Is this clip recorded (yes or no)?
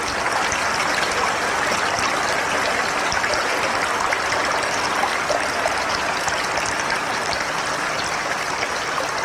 yes